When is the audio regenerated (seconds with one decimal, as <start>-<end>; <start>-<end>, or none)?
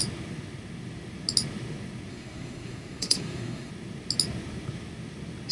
2.1-3.7